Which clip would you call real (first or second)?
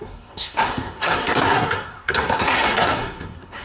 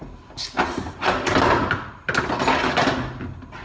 second